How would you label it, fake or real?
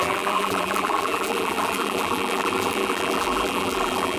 fake